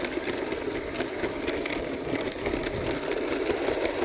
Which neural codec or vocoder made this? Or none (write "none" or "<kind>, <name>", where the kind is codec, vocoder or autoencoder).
none